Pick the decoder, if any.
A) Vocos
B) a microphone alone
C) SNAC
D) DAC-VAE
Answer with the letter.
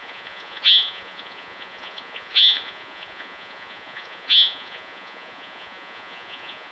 A